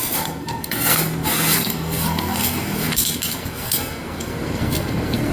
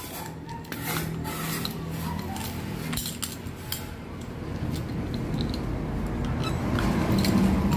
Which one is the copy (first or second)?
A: first